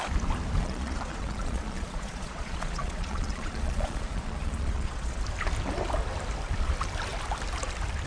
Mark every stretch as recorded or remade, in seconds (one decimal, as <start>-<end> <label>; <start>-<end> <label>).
0.0-0.6 recorded; 0.6-5.2 remade; 5.2-8.1 recorded